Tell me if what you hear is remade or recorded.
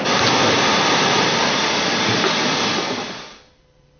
remade